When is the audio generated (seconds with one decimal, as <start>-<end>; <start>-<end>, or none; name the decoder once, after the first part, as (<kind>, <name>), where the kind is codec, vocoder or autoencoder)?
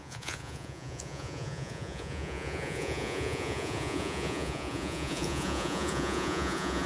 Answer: 0.0-6.9 (vocoder, Vocos)